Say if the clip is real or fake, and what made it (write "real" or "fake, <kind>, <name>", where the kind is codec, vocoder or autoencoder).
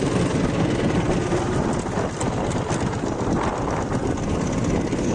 real